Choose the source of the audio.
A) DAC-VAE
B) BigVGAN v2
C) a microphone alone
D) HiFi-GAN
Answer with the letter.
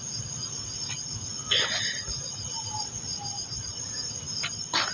C